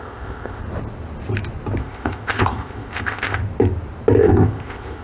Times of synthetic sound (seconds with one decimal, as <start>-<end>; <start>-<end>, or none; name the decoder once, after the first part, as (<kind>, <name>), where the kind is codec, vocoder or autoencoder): 0.0-0.6 (codec, ZipCodec); 1.8-3.4; 4.2-5.0